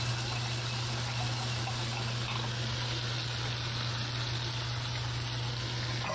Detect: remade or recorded recorded